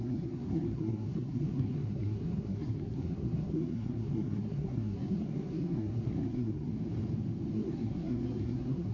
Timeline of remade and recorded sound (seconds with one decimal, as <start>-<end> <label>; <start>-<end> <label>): 0.0-6.7 remade; 6.7-7.5 recorded; 7.5-8.9 remade